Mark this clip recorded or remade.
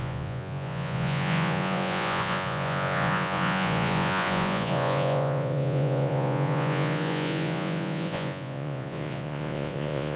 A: remade